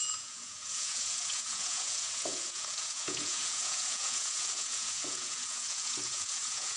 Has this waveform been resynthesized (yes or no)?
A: yes